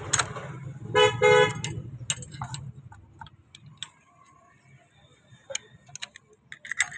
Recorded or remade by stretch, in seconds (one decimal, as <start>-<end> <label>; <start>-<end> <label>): 0.0-7.0 recorded